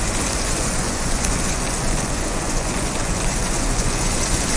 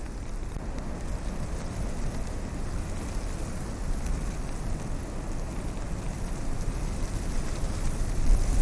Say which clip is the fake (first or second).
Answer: first